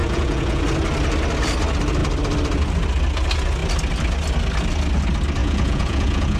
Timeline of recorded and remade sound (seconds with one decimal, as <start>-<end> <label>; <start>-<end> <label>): 0.0-0.6 remade; 0.6-5.4 recorded; 5.4-6.4 remade